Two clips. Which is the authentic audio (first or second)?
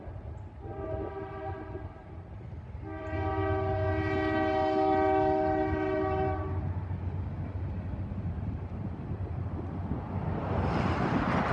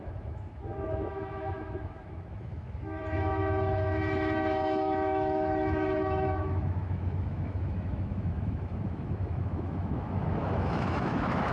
first